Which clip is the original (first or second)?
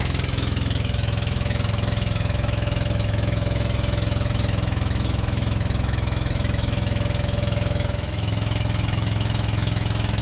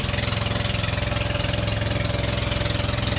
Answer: second